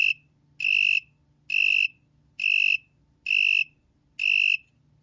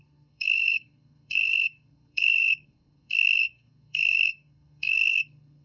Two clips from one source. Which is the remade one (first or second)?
second